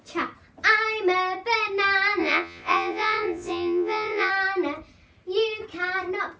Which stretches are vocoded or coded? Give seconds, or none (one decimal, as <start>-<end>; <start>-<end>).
2.2-4.3